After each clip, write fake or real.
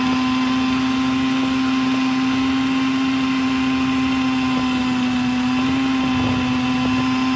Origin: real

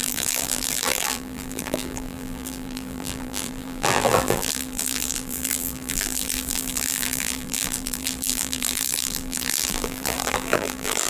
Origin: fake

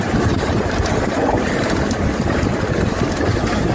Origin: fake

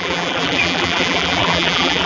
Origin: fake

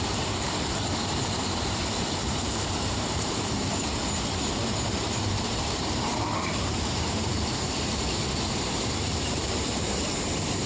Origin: fake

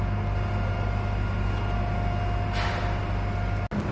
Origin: real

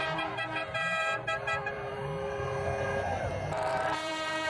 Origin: fake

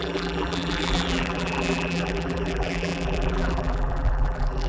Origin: fake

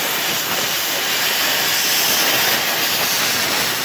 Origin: real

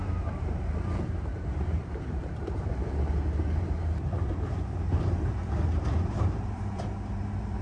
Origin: fake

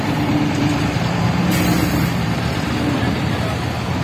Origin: fake